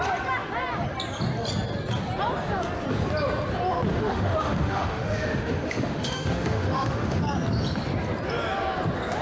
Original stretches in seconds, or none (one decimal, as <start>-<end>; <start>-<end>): 0.0-3.9; 7.2-9.2